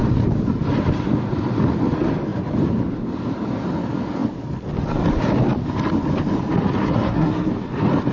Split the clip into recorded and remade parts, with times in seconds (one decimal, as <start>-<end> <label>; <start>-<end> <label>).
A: 0.0-6.8 recorded; 6.8-7.5 remade; 7.5-8.1 recorded